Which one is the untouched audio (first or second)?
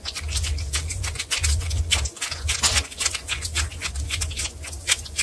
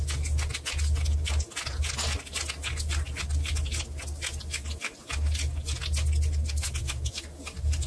second